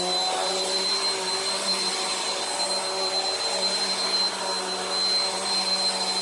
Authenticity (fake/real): real